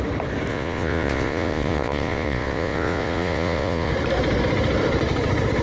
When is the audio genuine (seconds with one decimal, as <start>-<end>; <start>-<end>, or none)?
0.0-0.5; 3.9-5.6